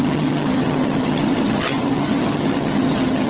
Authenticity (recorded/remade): remade